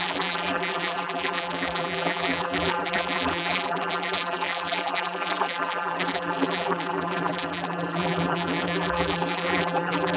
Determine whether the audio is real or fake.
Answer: fake